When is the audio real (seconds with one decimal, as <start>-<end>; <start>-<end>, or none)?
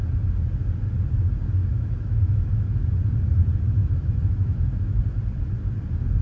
0.0-1.6; 2.9-3.8; 5.0-6.2